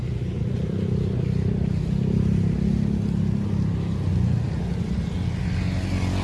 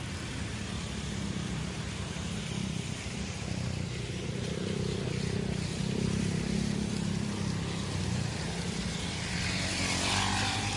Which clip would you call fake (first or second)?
second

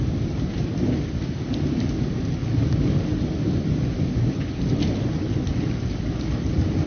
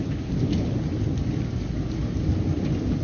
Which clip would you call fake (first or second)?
first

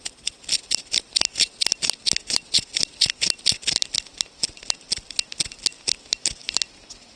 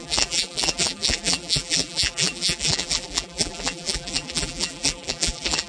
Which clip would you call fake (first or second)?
second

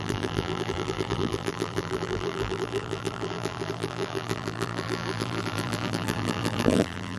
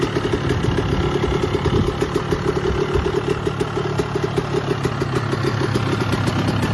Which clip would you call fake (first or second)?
first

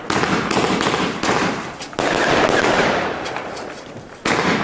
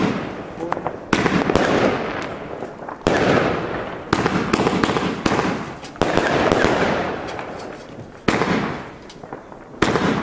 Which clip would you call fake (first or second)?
first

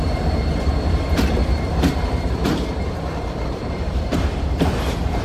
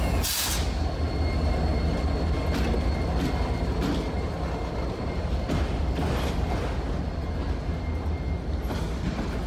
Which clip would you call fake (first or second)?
first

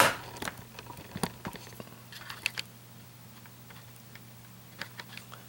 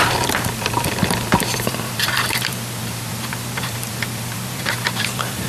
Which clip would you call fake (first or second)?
second